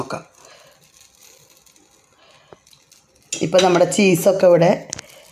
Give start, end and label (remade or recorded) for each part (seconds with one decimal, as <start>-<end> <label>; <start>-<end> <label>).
0.0-4.2 recorded; 4.2-4.7 remade; 4.7-5.3 recorded